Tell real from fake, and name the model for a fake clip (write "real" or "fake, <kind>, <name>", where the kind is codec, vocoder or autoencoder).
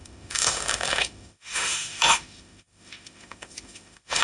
fake, autoencoder, DAC-VAE